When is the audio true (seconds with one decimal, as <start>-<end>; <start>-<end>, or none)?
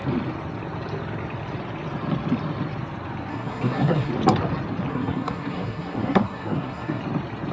0.0-3.3; 4.1-4.9; 7.0-7.5